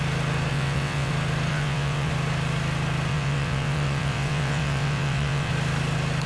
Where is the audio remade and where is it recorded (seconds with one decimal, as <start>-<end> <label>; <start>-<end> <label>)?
0.0-0.5 recorded; 0.5-1.1 remade; 1.1-1.5 recorded; 1.5-2.1 remade; 2.1-3.1 recorded; 3.1-5.5 remade; 5.5-6.3 recorded